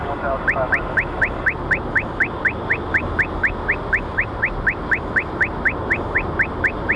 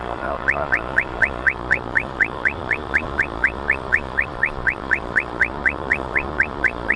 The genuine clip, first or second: first